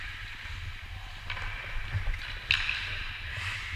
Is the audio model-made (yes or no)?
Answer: no